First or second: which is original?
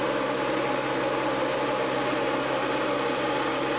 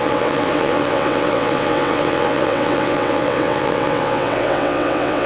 first